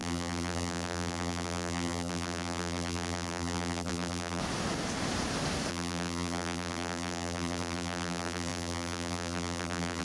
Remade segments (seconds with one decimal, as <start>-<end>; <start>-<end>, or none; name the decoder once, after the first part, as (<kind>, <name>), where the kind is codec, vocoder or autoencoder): 0.0-4.4 (vocoder, BigVGAN v2); 5.7-10.0